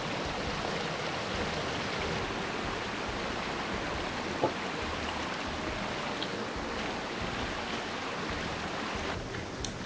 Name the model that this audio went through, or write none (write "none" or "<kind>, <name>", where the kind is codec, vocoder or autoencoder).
none